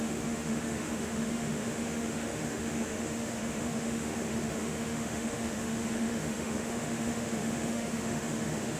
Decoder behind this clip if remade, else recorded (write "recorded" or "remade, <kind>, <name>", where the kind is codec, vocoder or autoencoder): remade, autoencoder, DAC-VAE